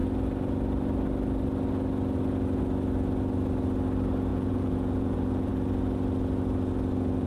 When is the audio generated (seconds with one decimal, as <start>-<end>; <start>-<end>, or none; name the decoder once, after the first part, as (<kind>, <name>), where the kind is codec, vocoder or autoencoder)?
4.3-5.5 (vocoder, Vocos)